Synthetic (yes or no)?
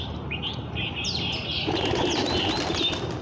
no